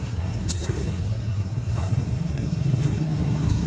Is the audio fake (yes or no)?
yes